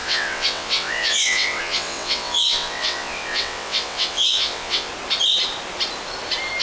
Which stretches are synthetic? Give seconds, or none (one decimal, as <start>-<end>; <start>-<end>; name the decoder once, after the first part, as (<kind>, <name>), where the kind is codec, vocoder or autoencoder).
0.0-4.9 (vocoder, WaveNeXt)